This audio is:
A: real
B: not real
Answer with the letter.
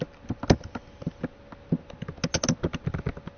A